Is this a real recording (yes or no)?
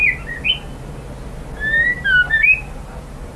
yes